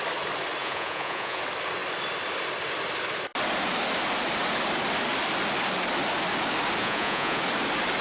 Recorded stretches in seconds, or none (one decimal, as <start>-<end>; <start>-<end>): 0.0-0.6; 1.4-6.8; 7.4-8.0